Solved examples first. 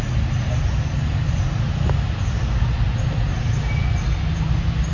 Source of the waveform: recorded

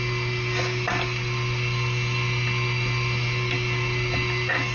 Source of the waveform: recorded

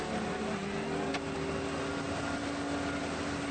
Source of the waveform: recorded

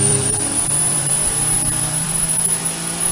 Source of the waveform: remade